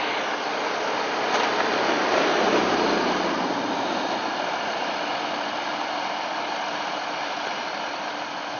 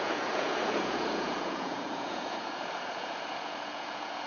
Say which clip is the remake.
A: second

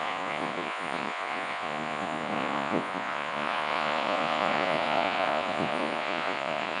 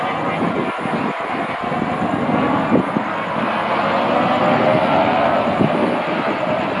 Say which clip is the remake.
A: first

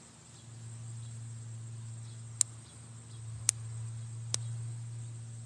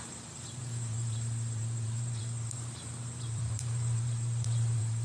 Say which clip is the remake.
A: second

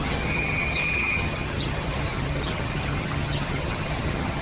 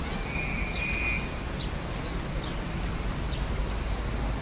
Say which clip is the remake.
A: first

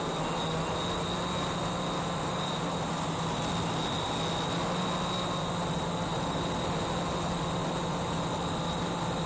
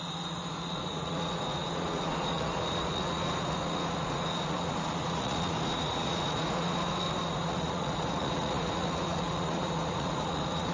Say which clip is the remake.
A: second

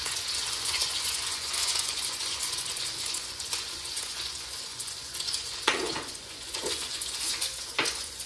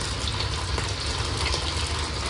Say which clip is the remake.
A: first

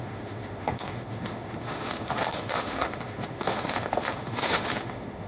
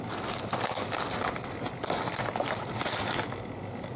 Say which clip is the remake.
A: first